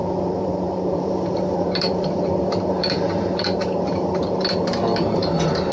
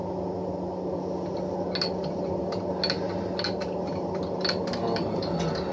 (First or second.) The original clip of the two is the second